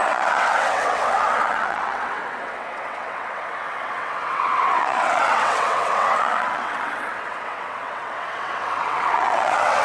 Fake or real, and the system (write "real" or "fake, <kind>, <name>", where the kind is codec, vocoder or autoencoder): fake, vocoder, WaveNeXt